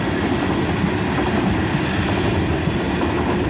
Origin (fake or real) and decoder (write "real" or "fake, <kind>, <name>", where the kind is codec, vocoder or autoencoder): real